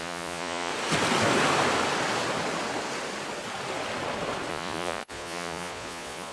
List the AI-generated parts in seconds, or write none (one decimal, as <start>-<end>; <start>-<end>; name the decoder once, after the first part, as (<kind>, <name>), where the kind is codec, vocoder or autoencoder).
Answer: 0.0-0.7 (vocoder, Vocos); 4.5-6.3